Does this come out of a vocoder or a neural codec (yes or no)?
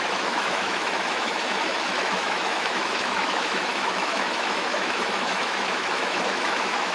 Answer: yes